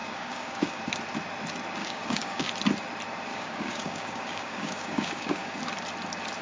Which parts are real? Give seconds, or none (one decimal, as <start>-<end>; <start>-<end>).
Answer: 0.8-1.8; 2.5-3.3; 5.6-6.4

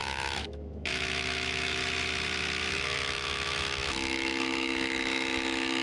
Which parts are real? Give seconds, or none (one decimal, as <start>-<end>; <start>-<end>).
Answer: 1.8-2.7

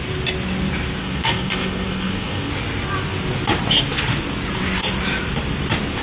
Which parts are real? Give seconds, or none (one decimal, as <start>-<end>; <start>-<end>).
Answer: 0.0-1.0; 2.5-6.0